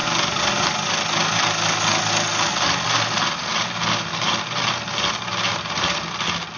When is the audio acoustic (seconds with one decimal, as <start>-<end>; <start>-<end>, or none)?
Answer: 0.0-6.6